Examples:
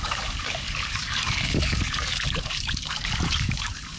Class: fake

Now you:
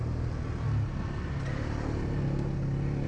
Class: real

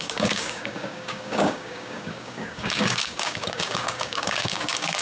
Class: fake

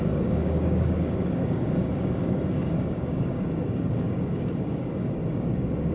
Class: fake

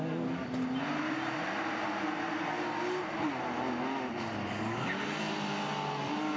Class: real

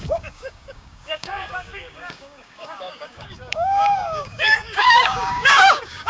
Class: fake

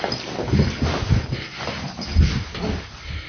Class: real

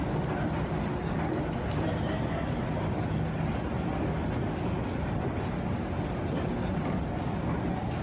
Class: real